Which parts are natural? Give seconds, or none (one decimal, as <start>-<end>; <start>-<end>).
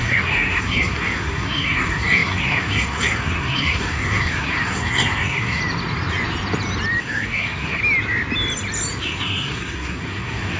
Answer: 5.6-7.0; 7.8-9.0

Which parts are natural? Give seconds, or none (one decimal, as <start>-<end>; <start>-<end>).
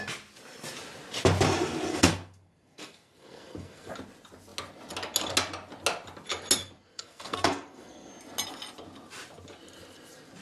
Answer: 0.0-1.9; 3.9-6.6; 8.1-10.4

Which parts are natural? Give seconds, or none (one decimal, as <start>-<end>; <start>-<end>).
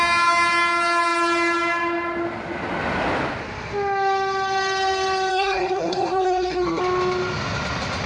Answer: 0.0-5.3; 6.8-8.1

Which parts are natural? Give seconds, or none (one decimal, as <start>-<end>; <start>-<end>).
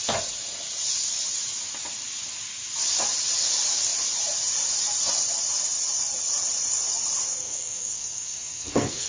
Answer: 0.0-7.4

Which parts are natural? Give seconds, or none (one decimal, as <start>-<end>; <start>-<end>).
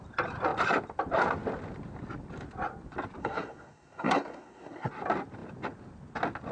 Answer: 0.0-3.2; 4.9-6.5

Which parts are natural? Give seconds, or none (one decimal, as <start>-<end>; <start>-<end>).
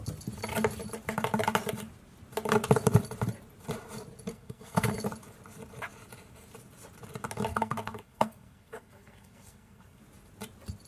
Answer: 0.0-4.3; 4.9-7.5; 10.0-10.9